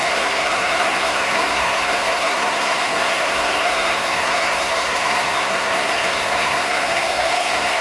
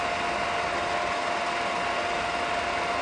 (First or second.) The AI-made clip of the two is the first